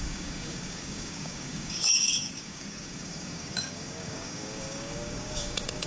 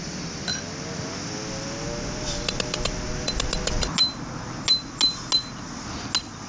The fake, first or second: first